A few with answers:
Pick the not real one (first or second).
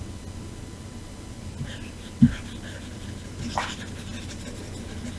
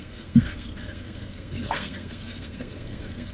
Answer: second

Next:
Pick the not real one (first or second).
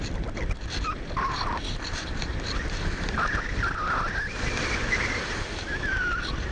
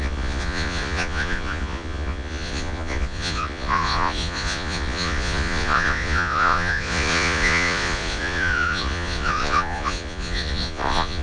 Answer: second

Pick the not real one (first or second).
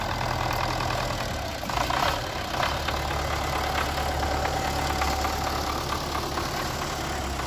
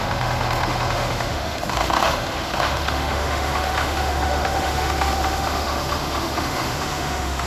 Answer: second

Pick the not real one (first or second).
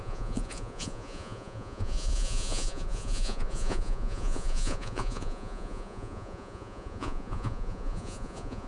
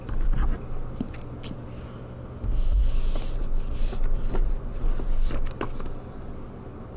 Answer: first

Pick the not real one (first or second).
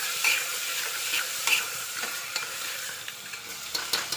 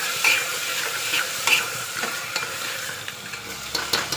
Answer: first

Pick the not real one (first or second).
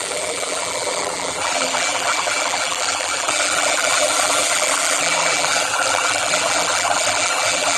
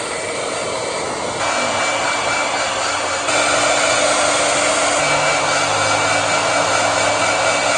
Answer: first